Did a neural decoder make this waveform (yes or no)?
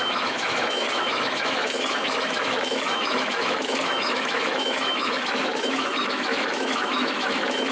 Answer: yes